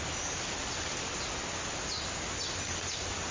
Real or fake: real